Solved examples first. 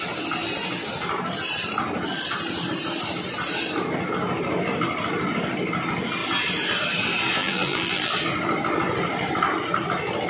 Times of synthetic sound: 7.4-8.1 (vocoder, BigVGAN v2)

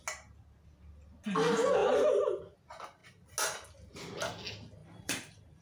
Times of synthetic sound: 4.8-5.6 (vocoder, BigVGAN v2)

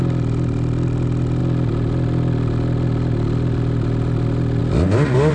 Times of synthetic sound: none

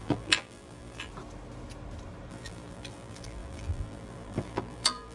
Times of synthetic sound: 0.0-1.1 (vocoder, BigVGAN v2); 2.3-5.1

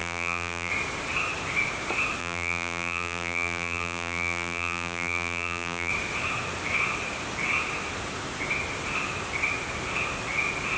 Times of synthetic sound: 0.0-0.7 (vocoder, BigVGAN v2); 2.2-5.9